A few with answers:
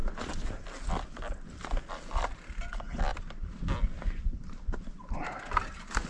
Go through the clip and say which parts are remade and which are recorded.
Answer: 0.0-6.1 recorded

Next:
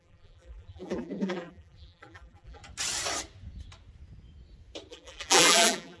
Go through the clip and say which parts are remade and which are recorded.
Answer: 0.0-2.6 remade; 2.6-4.9 recorded; 4.9-6.0 remade

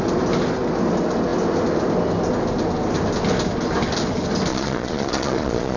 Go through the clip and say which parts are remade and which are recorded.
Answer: 0.0-4.5 recorded; 4.5-5.8 remade

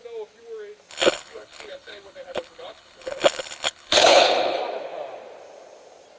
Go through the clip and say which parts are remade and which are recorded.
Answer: 0.0-0.9 recorded; 0.9-4.6 remade; 4.6-6.2 recorded

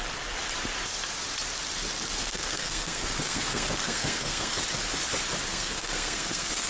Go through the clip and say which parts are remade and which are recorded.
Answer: 0.0-2.2 recorded; 2.2-4.6 remade; 4.6-5.5 recorded; 5.5-6.7 remade

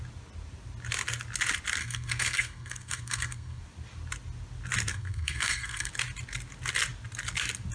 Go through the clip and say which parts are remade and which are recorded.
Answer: 0.0-1.8 recorded; 1.8-3.6 remade; 3.6-4.9 recorded; 4.9-5.9 remade; 5.9-7.7 recorded

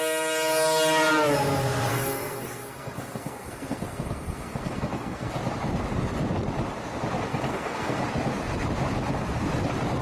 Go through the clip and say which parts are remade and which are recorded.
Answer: 0.0-1.9 recorded; 1.9-5.3 remade; 5.3-7.3 recorded; 7.3-8.0 remade; 8.0-10.0 recorded